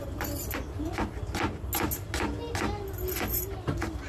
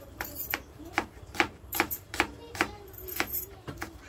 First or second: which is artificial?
second